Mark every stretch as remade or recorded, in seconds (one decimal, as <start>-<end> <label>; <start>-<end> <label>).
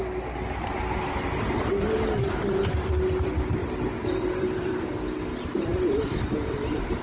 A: 0.0-3.6 recorded; 3.6-4.9 remade; 4.9-5.7 recorded; 5.7-7.0 remade